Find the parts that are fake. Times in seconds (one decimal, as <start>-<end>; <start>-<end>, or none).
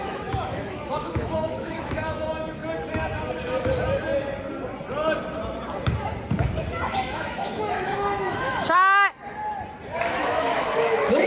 0.0-2.6; 6.9-8.6; 10.2-11.3